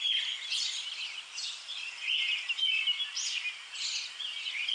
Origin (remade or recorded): recorded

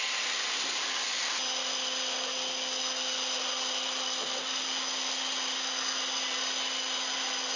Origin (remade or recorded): recorded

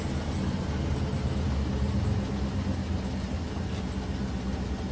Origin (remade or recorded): recorded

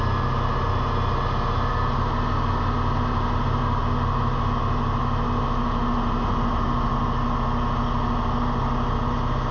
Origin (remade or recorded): recorded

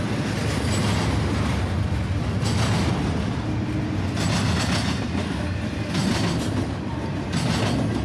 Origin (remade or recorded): recorded